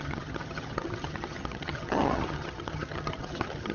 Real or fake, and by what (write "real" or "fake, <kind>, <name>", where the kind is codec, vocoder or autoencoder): fake, vocoder, HiFi-GAN